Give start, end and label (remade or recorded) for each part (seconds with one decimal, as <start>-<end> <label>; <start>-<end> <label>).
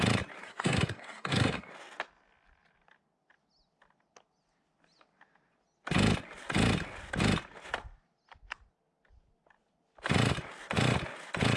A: 0.0-0.4 recorded; 0.4-1.7 remade; 1.7-11.6 recorded